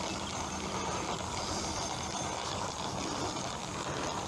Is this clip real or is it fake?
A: real